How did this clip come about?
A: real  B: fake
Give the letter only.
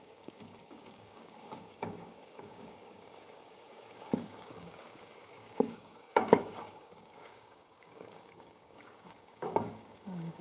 B